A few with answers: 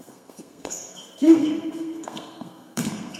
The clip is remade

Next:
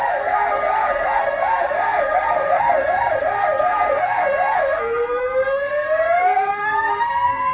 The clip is remade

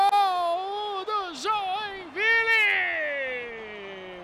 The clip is recorded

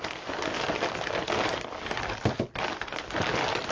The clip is recorded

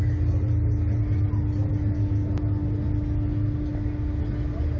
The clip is recorded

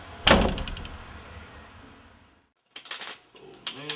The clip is recorded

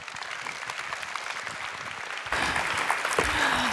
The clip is recorded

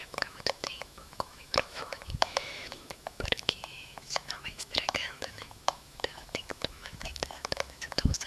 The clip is remade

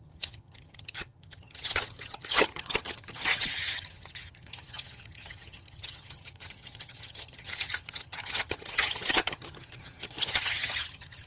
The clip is remade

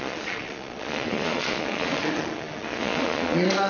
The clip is remade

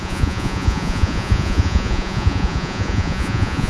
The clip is remade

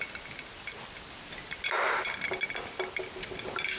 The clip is recorded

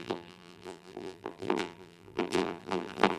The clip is remade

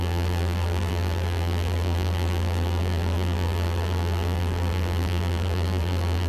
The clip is remade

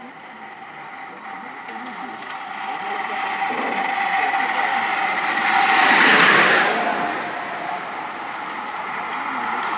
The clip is recorded